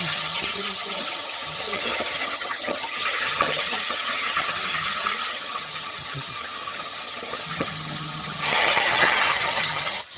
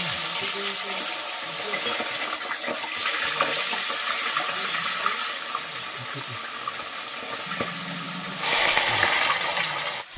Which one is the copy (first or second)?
first